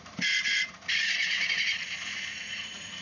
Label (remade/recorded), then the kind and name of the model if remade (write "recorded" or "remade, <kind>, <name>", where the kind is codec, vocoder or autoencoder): remade, vocoder, Vocos